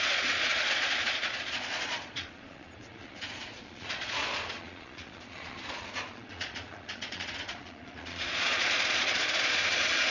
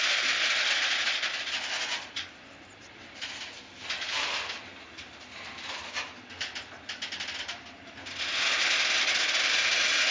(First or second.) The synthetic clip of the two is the first